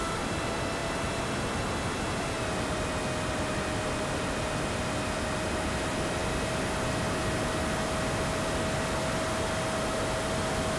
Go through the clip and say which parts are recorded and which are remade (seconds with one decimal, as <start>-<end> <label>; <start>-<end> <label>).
0.0-10.8 recorded